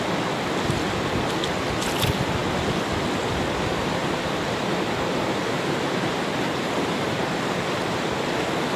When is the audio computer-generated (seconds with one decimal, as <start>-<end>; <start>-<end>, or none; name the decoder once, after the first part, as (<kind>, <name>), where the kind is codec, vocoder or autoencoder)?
4.0-8.3 (vocoder, BigVGAN v2)